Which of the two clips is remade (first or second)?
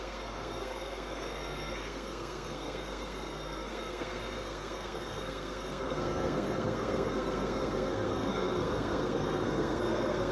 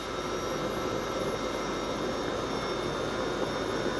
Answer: first